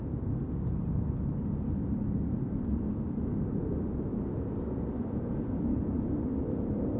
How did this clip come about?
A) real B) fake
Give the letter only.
A